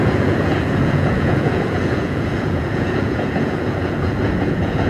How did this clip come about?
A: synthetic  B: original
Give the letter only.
A